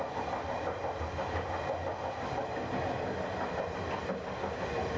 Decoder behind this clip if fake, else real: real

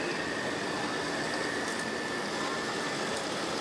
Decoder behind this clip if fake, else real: real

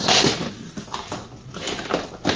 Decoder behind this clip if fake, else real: real